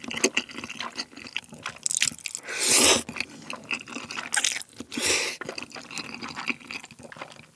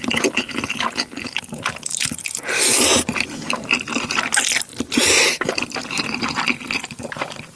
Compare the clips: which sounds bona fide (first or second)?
first